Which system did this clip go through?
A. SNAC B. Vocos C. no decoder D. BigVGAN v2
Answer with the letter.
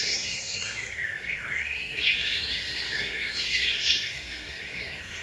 A